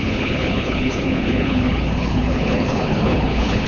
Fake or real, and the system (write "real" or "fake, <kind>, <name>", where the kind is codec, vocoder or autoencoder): fake, codec, HILCodec